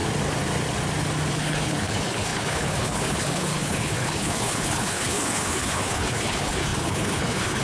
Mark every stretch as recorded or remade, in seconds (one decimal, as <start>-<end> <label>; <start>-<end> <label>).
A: 0.0-1.3 recorded; 1.3-7.6 remade